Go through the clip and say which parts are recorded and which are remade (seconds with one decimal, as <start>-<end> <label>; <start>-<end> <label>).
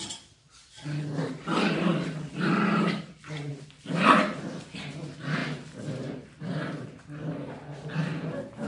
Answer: 0.0-8.7 recorded